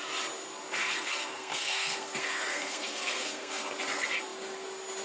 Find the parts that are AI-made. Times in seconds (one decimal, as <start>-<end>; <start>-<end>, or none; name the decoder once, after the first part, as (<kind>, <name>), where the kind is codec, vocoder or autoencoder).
0.8-3.7 (codec, SNAC)